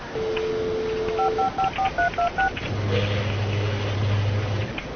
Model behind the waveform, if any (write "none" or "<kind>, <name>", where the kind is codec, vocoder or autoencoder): none